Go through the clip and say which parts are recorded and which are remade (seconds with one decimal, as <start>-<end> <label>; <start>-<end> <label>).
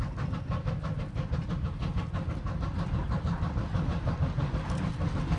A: 0.0-3.9 recorded; 3.9-4.9 remade; 4.9-5.4 recorded